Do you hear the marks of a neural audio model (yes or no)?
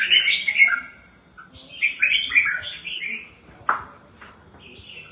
no